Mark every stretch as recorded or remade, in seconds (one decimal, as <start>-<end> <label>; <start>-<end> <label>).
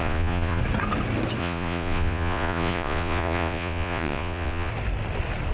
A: 0.0-0.6 remade; 0.6-1.4 recorded; 1.4-4.7 remade; 4.7-5.5 recorded